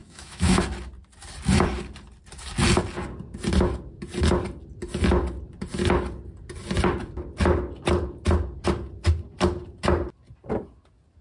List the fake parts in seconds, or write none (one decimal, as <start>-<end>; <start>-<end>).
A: 0.0-0.6